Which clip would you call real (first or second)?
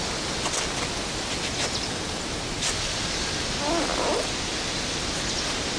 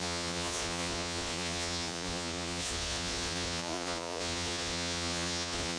first